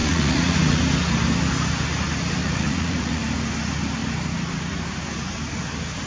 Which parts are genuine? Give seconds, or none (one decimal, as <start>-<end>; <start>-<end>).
0.8-2.4; 3.2-6.1

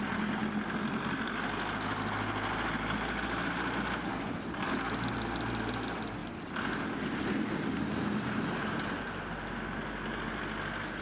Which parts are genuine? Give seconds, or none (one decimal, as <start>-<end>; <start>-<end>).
0.0-11.0

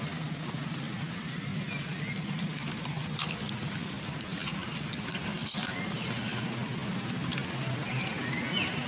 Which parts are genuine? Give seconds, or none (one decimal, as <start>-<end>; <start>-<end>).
0.0-8.9

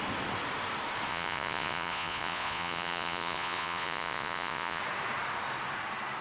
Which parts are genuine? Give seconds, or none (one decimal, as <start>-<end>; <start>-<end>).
0.0-1.1; 4.8-6.2

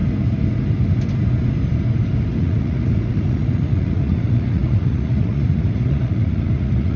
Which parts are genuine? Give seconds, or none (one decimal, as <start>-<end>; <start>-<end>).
0.0-2.4

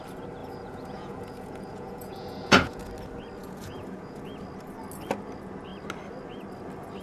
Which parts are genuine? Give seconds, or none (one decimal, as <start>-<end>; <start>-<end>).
0.0-0.4; 2.9-3.4; 4.2-7.0